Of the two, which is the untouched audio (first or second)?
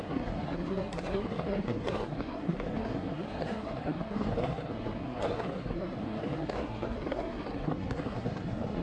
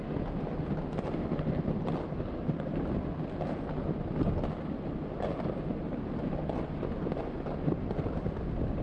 second